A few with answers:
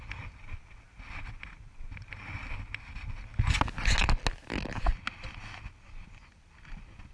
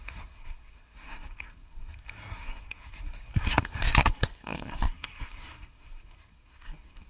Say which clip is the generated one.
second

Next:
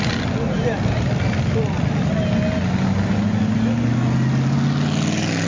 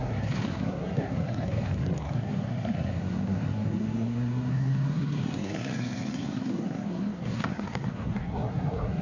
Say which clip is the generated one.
second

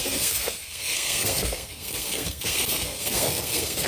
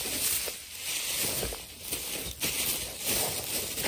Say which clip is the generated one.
first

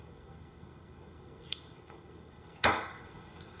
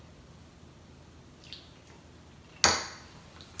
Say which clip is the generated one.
first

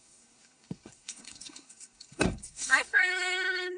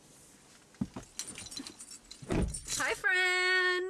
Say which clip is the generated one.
first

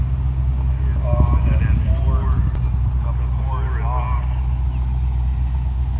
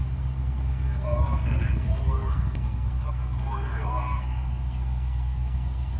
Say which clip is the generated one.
second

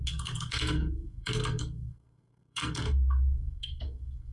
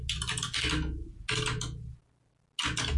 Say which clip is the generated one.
first